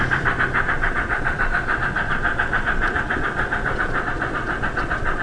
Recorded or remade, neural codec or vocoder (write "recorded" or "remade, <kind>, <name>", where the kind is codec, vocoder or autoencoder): remade, vocoder, Vocos